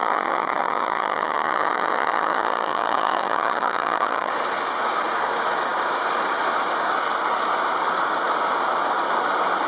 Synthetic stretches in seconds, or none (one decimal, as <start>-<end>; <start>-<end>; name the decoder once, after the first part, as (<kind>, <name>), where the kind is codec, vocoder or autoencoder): 0.0-4.3 (vocoder, HiFi-GAN)